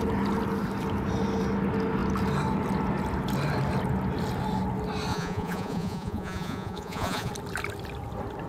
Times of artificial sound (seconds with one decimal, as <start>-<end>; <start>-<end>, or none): 5.1-7.3